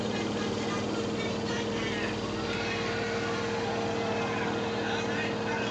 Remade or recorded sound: recorded